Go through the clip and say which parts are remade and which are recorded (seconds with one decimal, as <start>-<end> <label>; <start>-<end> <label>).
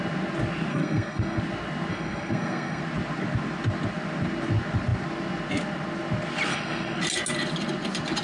0.0-0.7 recorded; 0.7-1.4 remade; 1.4-1.9 recorded; 1.9-2.8 remade; 2.8-6.5 recorded; 6.5-7.0 remade; 7.0-8.2 recorded